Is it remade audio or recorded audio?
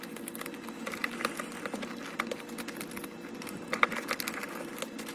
recorded